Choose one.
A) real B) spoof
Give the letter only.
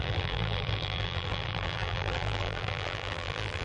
B